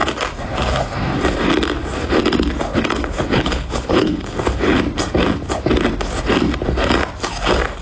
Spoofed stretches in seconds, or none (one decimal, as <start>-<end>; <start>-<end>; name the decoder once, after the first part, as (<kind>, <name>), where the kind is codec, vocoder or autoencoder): 2.7-4.8 (codec, HILCodec)